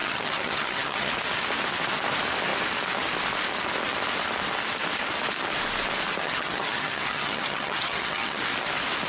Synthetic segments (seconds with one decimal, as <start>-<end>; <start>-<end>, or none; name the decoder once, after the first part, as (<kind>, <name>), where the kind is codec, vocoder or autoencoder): 0.0-1.1 (vocoder, HiFi-GAN); 6.2-8.4